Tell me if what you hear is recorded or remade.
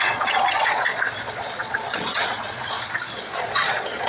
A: remade